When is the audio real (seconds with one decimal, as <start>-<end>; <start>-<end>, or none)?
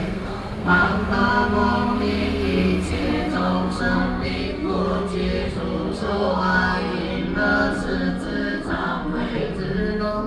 7.1-8.1